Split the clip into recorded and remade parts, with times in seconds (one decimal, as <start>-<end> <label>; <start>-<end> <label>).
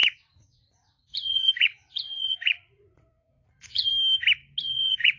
0.0-3.9 remade; 3.9-4.6 recorded; 4.6-5.2 remade